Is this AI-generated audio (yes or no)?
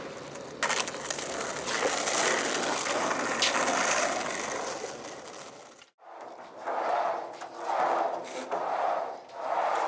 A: no